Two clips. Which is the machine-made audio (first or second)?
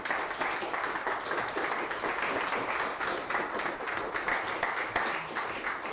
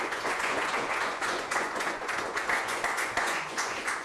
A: second